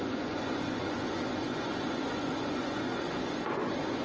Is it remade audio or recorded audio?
remade